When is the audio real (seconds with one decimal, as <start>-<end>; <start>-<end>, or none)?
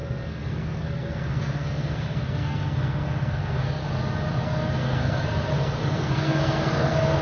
3.8-4.4